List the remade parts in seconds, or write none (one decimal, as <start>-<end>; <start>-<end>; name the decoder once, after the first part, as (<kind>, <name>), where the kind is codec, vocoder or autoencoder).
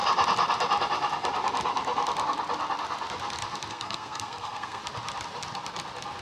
3.7-4.8 (codec, SNAC)